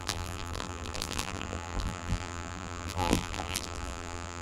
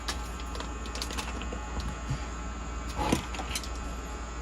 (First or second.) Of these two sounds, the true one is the second